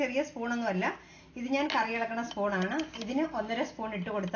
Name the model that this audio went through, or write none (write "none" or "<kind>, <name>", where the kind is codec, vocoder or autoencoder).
none